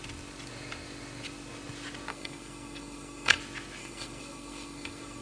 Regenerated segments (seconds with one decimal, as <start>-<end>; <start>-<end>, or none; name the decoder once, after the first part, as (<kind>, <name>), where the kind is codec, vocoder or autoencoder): 2.1-3.4 (codec, SNAC); 3.8-5.2